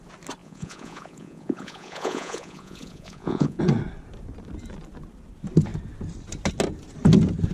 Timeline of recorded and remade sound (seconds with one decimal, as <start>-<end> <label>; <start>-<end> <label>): 0.0-0.4 recorded; 0.4-3.6 remade; 3.6-7.5 recorded